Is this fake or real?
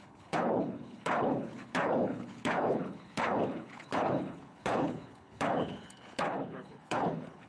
fake